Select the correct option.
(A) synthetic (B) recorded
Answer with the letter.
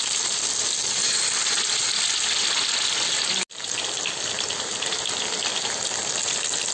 B